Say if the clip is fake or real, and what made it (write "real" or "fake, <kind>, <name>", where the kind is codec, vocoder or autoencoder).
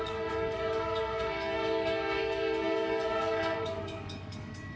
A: fake, codec, DAC